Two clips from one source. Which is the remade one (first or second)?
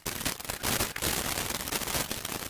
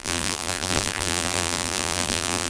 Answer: second